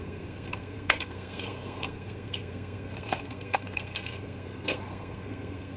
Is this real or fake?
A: fake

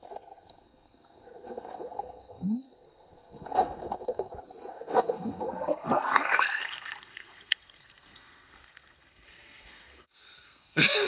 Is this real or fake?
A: fake